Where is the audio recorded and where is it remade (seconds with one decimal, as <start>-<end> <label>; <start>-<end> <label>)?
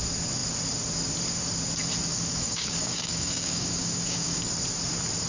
0.0-2.1 recorded; 2.1-4.5 remade; 4.5-5.3 recorded